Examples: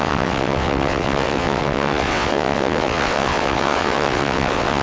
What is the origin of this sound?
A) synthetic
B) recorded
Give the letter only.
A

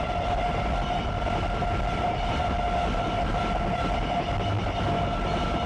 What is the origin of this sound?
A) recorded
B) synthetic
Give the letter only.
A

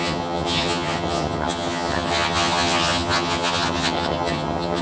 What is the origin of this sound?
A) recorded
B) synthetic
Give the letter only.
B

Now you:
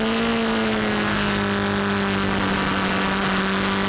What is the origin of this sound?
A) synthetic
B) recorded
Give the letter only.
B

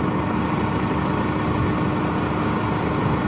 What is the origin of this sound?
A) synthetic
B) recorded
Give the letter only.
B